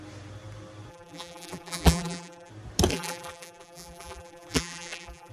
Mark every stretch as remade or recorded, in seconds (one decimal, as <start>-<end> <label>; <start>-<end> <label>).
0.0-0.9 recorded; 0.9-2.5 remade; 2.5-2.9 recorded; 2.9-5.3 remade